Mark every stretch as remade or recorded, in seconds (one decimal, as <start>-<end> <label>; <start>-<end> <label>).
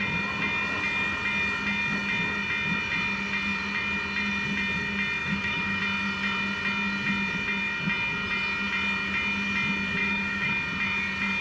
0.0-5.2 recorded; 5.2-5.8 remade; 5.8-10.0 recorded; 10.0-10.5 remade; 10.5-11.4 recorded